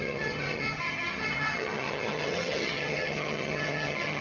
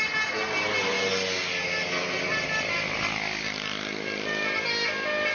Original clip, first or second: second